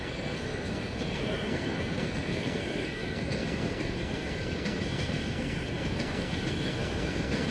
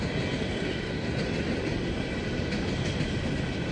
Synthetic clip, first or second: first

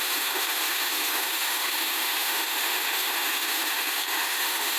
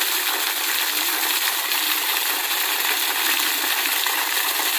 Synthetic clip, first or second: first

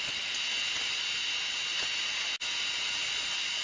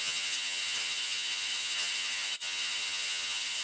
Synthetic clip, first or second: second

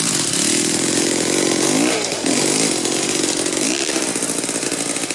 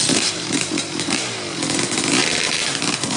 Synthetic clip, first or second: second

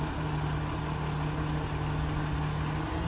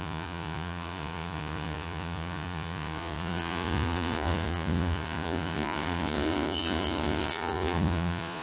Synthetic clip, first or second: second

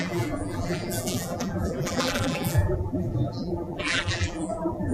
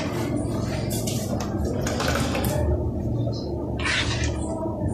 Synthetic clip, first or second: first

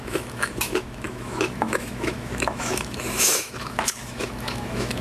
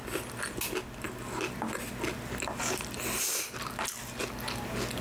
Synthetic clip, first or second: first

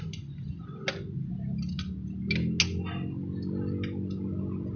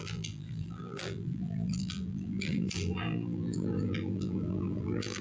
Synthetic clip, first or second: second